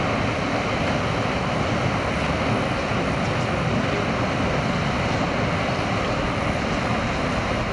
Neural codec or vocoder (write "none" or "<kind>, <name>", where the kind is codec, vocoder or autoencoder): none